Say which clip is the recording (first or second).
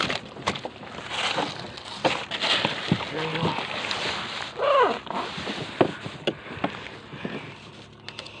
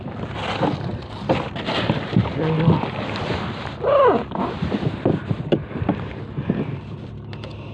first